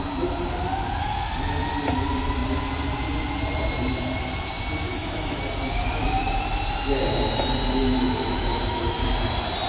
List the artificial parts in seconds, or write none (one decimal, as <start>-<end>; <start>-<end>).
4.9-5.4; 7.8-9.1